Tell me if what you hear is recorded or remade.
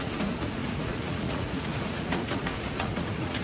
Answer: remade